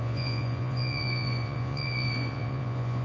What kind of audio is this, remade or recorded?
remade